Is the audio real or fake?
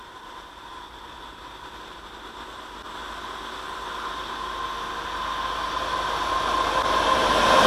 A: real